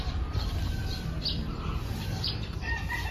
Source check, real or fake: fake